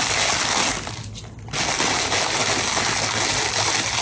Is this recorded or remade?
recorded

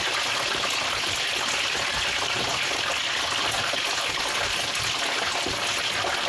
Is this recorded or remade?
recorded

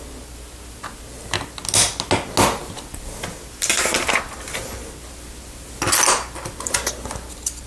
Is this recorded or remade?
recorded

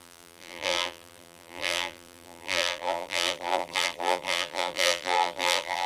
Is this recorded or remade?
remade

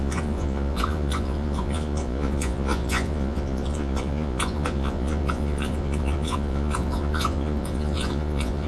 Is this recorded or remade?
remade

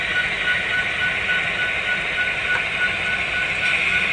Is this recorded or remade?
recorded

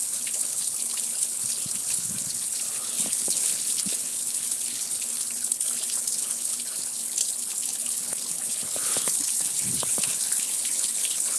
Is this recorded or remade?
remade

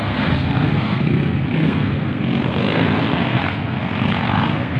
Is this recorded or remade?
remade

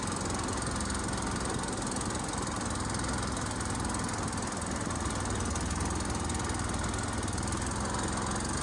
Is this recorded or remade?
recorded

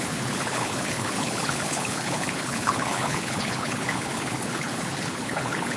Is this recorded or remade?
remade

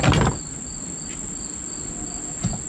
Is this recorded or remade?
recorded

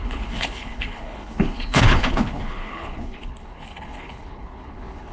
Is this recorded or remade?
remade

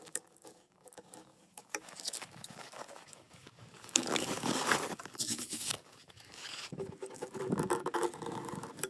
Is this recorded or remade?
remade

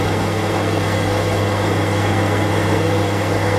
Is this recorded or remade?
remade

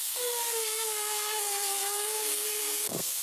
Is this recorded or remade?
remade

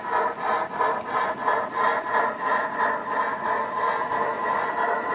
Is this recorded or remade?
recorded